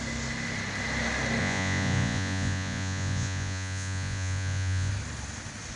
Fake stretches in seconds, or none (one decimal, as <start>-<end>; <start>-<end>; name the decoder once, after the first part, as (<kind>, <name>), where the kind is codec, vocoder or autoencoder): 1.4-4.9 (vocoder, Vocos)